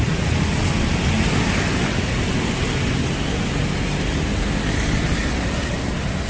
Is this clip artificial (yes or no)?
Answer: no